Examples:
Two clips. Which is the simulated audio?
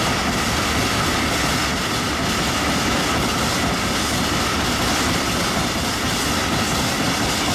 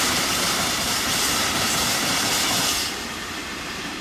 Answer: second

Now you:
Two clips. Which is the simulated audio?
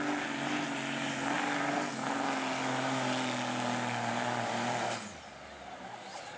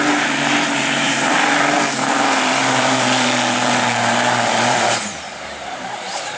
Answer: second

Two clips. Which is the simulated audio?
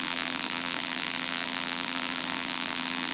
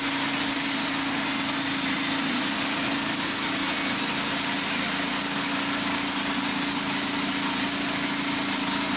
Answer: first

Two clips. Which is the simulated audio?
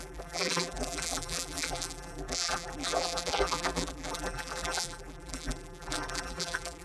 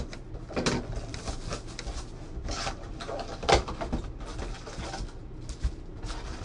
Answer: first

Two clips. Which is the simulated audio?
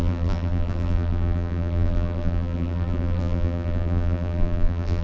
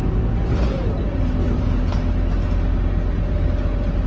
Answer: first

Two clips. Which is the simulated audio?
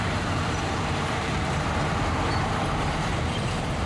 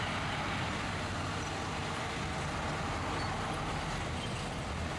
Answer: first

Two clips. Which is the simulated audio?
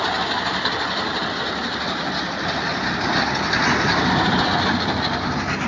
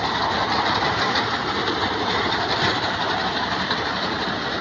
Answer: second